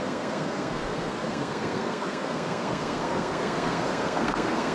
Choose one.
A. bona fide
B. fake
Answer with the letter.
B